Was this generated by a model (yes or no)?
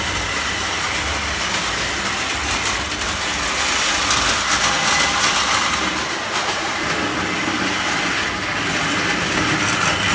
no